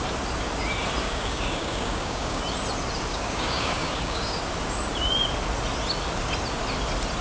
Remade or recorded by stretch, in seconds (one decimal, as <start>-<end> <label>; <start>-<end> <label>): 0.0-1.0 recorded; 1.0-2.4 remade; 2.4-3.1 recorded; 3.1-4.4 remade; 4.4-7.2 recorded